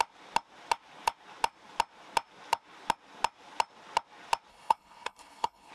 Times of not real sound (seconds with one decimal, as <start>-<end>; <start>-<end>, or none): 4.5-5.7